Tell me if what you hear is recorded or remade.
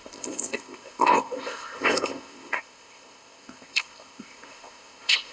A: remade